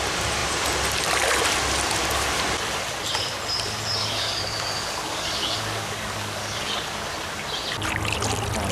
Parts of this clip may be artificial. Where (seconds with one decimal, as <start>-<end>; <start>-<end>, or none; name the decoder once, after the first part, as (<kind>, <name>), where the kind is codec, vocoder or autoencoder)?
4.0-6.7 (codec, DAC)